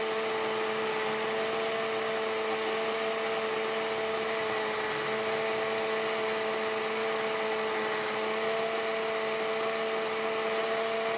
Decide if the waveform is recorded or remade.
recorded